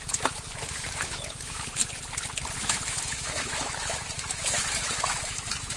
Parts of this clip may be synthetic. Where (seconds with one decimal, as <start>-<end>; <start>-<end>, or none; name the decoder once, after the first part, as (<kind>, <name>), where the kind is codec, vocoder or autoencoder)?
0.0-1.8 (autoencoder, DAC-VAE); 2.6-5.8